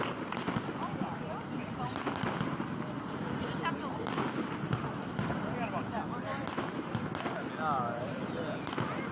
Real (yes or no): yes